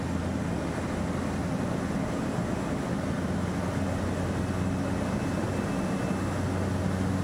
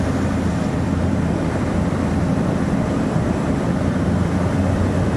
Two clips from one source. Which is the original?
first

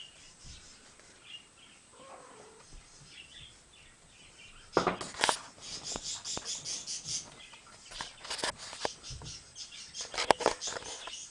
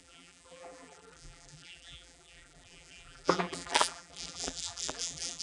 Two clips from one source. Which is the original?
first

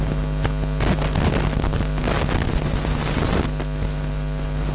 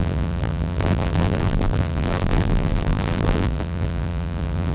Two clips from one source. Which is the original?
first